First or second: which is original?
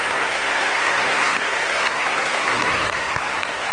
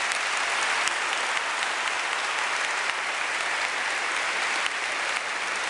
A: second